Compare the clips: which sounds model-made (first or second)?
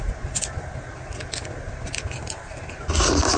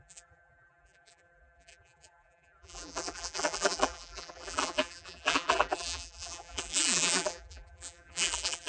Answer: second